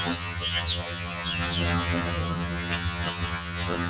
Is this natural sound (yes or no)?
no